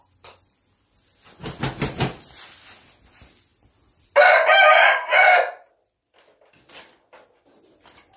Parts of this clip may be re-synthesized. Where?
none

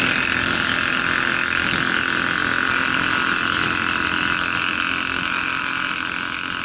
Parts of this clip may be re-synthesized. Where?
none